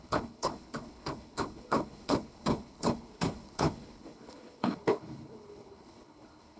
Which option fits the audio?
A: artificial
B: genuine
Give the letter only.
A